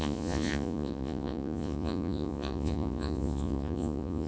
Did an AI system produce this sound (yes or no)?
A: yes